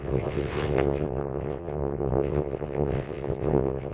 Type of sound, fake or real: fake